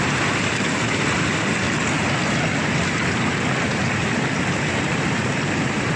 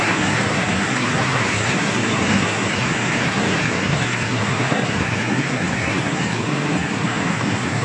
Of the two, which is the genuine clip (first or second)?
first